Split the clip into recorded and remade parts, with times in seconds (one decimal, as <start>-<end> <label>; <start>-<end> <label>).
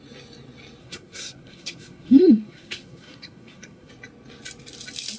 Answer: 0.0-0.8 recorded; 0.8-3.9 remade; 3.9-5.2 recorded